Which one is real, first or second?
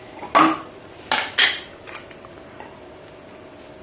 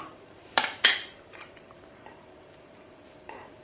first